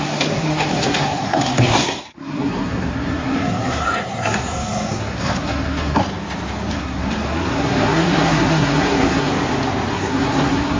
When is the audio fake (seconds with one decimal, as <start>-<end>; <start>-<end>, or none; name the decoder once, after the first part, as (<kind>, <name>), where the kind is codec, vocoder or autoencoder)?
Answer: 0.0-6.0 (codec, SNAC); 6.7-9.3; 9.9-10.8